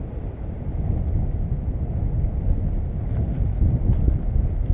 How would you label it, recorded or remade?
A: recorded